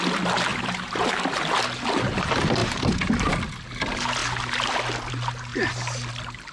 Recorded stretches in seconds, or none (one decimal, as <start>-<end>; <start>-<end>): 0.0-0.5; 1.2-2.6; 3.3-6.5